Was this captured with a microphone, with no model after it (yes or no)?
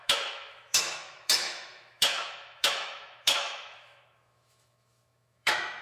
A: no